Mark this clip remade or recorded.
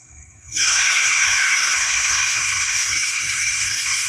remade